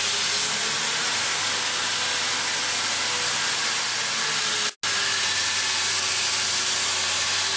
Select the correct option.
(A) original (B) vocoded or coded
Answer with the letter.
A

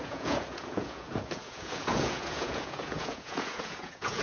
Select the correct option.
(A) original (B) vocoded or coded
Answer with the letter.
B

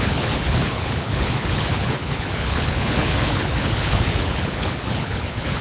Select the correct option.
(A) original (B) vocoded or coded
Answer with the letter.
B